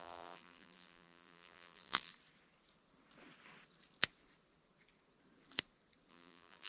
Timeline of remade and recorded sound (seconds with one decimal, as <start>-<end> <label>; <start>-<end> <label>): 0.0-2.1 remade; 2.1-6.1 recorded; 6.1-6.7 remade